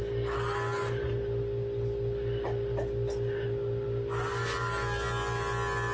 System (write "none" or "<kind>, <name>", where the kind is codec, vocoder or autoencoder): none